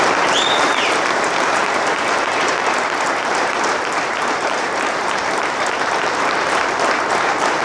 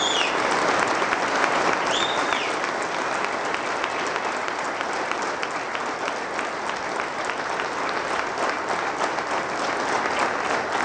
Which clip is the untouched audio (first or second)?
second